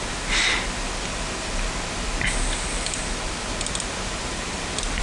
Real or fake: real